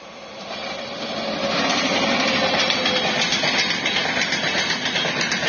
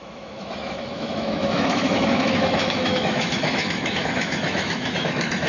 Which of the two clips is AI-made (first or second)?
second